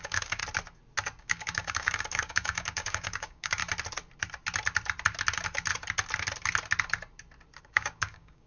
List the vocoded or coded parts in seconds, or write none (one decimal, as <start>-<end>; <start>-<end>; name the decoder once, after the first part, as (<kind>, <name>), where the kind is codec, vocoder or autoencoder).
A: 0.0-0.4 (codec, DAC); 1.2-3.6; 7.6-8.5